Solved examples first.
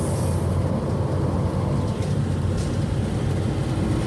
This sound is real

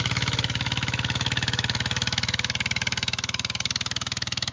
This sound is fake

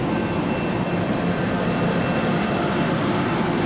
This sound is real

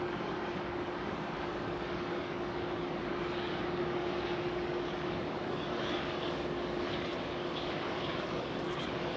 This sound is fake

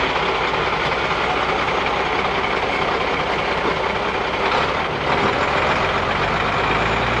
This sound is real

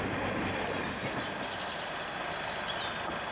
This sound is real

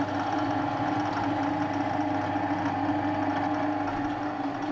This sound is real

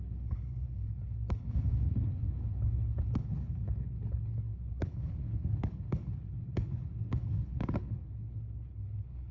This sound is fake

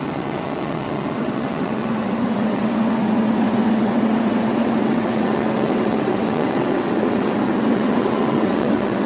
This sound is fake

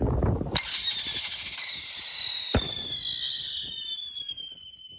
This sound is real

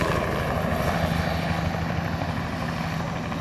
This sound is real